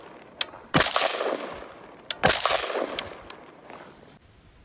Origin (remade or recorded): recorded